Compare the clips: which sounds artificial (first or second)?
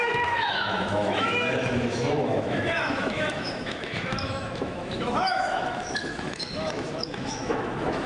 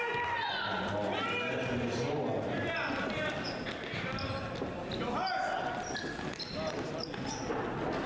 first